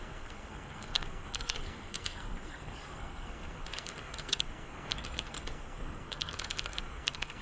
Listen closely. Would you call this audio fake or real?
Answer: fake